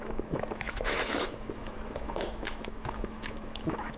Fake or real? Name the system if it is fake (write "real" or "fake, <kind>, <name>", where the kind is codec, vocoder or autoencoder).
fake, autoencoder, DAC-VAE